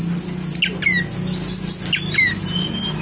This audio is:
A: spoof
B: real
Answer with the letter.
B